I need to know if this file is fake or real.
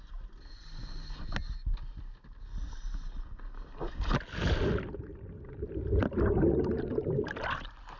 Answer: real